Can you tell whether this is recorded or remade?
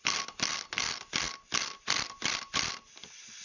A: recorded